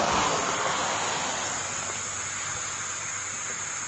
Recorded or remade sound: recorded